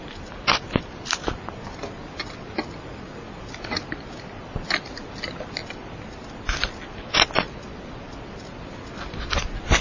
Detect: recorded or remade recorded